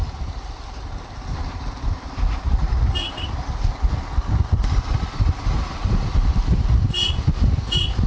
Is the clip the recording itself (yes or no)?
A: yes